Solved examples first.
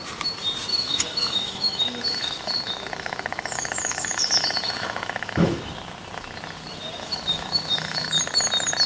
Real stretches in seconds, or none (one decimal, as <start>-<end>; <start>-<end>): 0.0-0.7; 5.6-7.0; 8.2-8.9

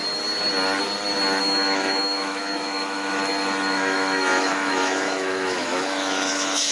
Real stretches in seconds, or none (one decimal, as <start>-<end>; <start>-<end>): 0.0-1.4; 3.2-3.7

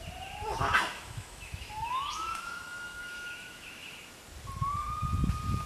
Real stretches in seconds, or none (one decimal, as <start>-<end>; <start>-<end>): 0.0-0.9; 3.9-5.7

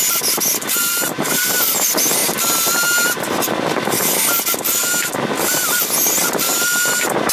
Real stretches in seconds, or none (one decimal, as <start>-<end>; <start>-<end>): 0.0-7.3